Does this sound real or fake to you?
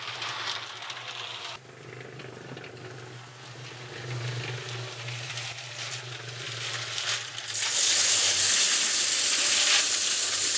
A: real